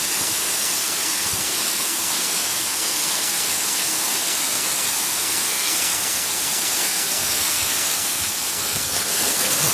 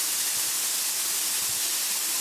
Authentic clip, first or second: second